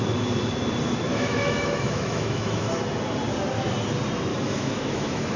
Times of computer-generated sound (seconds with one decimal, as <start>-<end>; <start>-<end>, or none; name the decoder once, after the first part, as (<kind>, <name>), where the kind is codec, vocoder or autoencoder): 1.1-2.7 (autoencoder, DAC-VAE); 4.3-5.4